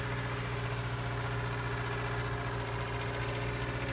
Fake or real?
real